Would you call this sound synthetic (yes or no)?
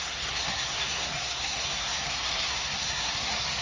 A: yes